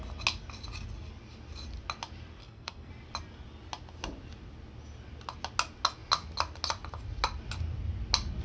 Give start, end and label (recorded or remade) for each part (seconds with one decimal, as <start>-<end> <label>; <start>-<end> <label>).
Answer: 0.0-2.4 recorded; 2.4-2.9 remade; 2.9-8.4 recorded

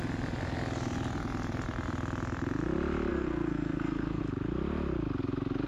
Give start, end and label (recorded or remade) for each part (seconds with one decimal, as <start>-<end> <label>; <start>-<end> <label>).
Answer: 0.0-3.1 recorded; 3.1-4.2 remade; 4.2-5.7 recorded

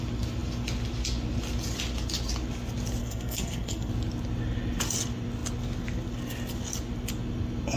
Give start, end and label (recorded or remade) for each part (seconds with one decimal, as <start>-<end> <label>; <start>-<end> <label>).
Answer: 0.0-3.0 recorded; 3.0-3.9 remade; 3.9-7.8 recorded

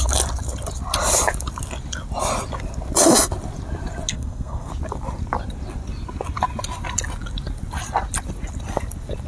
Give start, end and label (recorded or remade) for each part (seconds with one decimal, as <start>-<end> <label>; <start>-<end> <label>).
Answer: 0.0-4.1 recorded; 4.1-4.7 remade; 4.7-9.3 recorded

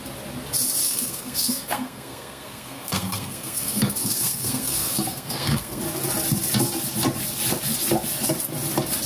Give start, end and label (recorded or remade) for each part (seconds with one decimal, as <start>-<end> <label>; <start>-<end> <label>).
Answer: 0.0-0.8 recorded; 0.8-5.8 remade; 5.8-9.1 recorded

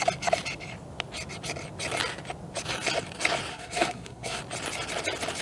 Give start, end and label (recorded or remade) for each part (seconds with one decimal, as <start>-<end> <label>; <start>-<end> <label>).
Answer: 0.0-3.5 recorded; 3.5-4.4 remade; 4.4-5.4 recorded